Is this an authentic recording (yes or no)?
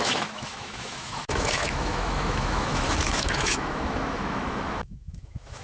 no